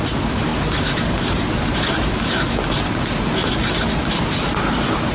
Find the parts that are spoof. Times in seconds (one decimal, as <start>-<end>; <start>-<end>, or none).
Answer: 0.5-2.3